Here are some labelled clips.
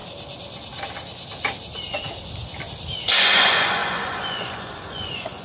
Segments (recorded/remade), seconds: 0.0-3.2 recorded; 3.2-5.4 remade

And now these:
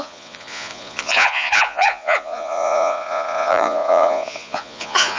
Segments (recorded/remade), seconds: 0.0-5.2 remade

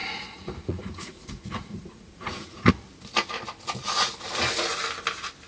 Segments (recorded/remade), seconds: 0.0-2.7 remade; 2.7-5.5 recorded

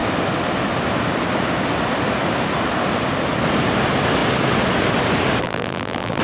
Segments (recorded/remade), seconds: 0.0-5.4 recorded; 5.4-6.2 remade